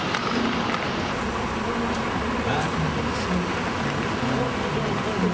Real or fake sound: real